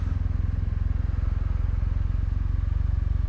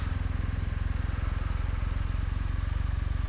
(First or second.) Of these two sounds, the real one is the first